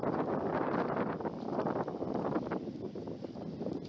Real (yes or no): yes